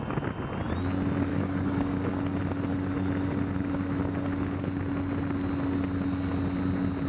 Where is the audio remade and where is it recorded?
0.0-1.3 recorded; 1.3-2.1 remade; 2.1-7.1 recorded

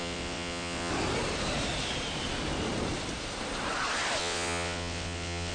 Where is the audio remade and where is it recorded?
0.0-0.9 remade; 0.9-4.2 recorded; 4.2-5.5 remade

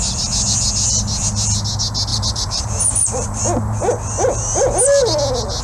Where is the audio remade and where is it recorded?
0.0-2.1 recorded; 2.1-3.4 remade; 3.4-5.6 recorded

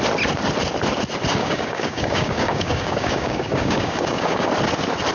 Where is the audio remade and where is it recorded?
0.0-1.4 recorded; 1.4-4.5 remade; 4.5-5.1 recorded

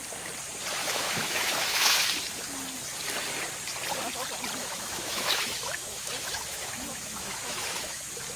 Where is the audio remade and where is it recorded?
0.0-0.8 recorded; 0.8-2.2 remade; 2.2-4.6 recorded; 4.6-8.0 remade; 8.0-8.4 recorded